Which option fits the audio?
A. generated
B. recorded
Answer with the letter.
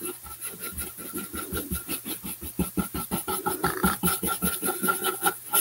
A